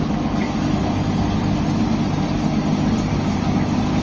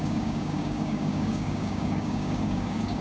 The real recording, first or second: first